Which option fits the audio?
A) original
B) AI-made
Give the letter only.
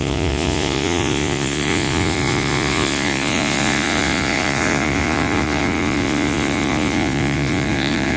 B